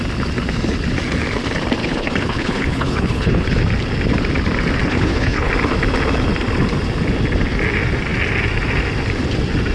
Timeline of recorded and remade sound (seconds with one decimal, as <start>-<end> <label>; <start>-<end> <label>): 0.0-1.8 recorded; 1.8-3.6 remade; 3.6-4.8 recorded; 4.8-5.5 remade; 5.5-9.7 recorded